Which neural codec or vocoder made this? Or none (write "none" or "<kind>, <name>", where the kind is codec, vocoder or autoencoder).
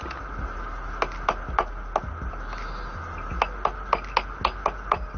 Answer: none